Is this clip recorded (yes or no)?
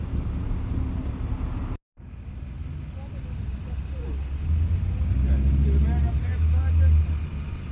yes